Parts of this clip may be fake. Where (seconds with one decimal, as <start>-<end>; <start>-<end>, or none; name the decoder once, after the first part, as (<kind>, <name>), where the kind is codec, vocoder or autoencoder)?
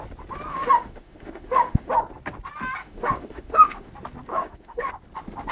0.5-1.9 (autoencoder, DAC-VAE); 2.8-3.9; 4.3-4.9